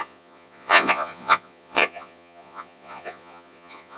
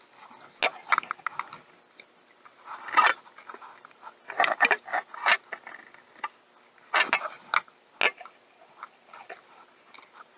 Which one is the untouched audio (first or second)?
second